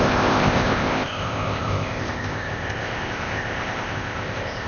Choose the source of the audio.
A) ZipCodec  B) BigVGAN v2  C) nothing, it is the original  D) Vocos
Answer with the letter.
A